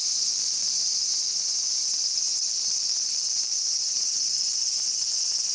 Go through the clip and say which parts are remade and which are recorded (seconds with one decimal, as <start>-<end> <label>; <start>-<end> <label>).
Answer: 0.0-0.9 recorded; 0.9-2.5 remade; 2.5-3.5 recorded; 3.5-4.2 remade; 4.2-5.5 recorded